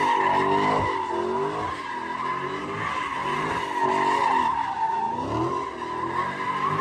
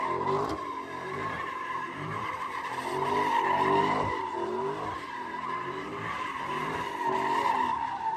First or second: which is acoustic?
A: first